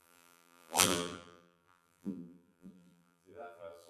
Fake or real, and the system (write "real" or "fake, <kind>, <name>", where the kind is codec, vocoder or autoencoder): fake, vocoder, BigVGAN v2